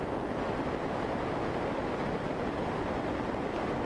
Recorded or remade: recorded